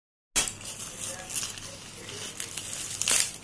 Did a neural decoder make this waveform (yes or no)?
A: no